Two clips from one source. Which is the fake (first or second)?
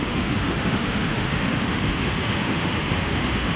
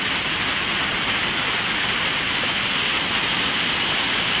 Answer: first